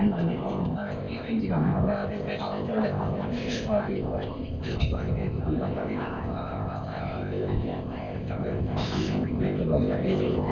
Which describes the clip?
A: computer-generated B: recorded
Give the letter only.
A